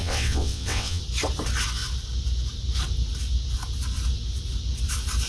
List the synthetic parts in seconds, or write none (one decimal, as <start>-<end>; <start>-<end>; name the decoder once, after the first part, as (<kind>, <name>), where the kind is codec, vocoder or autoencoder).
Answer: 0.0-1.0 (vocoder, WaveNeXt)